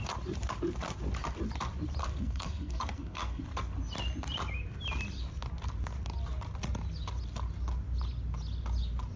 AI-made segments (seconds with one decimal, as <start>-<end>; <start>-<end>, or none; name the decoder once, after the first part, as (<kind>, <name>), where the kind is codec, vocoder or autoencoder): 2.0-3.4 (codec, SNAC)